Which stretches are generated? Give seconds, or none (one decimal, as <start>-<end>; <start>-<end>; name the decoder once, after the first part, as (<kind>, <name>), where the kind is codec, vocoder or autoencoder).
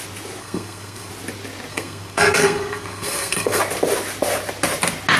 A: 0.4-1.1 (codec, SNAC); 1.7-3.6